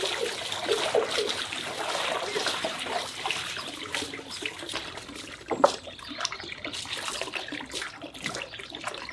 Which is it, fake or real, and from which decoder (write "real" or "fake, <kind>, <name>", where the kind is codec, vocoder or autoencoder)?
real